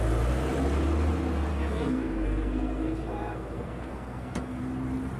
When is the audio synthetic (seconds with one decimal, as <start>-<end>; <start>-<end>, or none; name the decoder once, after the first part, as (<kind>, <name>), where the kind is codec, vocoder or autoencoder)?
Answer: 1.5-4.6 (codec, SNAC)